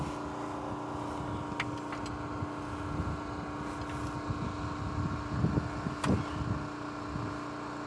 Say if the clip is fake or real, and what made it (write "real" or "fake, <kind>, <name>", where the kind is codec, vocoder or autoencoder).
real